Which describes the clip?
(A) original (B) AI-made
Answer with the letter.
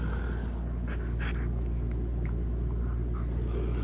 A